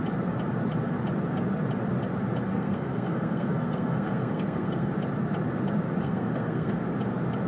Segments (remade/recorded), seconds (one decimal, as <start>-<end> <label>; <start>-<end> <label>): 0.0-2.5 recorded; 2.5-4.9 remade; 4.9-6.0 recorded; 6.0-6.7 remade; 6.7-7.5 recorded